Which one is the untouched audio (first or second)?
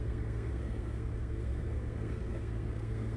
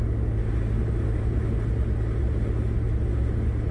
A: second